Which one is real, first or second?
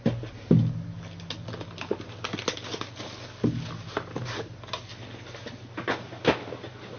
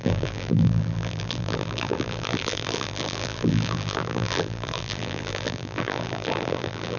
first